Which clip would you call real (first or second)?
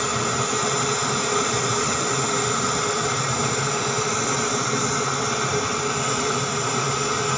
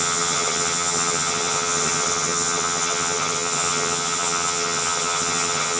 first